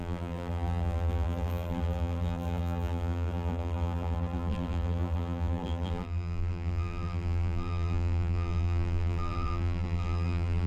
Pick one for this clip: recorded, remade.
remade